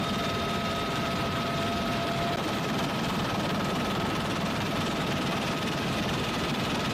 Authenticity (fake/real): fake